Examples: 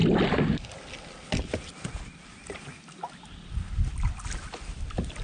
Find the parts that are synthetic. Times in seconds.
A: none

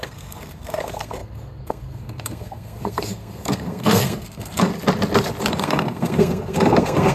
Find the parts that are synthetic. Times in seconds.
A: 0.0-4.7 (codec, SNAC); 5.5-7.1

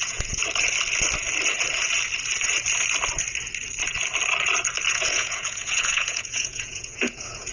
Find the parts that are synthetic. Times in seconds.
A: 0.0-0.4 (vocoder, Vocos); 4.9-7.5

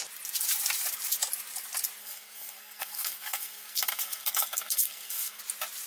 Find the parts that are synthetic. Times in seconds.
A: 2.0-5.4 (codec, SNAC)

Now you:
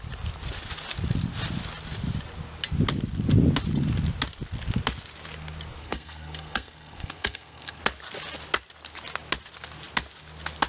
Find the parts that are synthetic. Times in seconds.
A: 5.8-7.8 (codec, SNAC)